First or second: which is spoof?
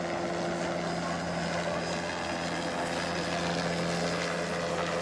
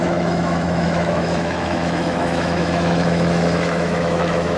second